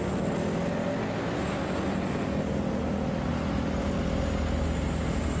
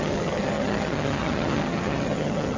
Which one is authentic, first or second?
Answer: first